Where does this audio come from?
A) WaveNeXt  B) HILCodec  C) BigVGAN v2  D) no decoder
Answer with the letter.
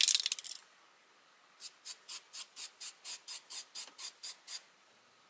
D